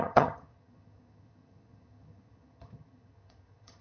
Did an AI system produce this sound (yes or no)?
yes